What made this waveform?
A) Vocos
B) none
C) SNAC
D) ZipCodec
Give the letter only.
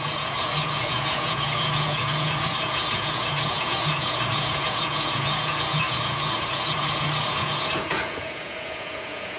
A